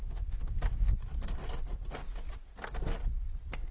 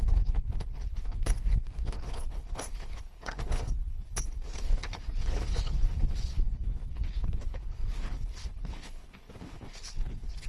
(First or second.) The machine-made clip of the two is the second